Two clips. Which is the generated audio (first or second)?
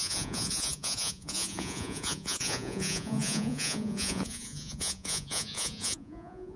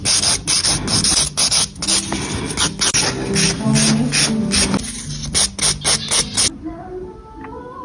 first